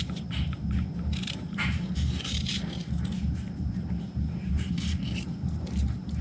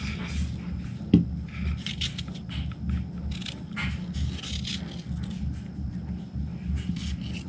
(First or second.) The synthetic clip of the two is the first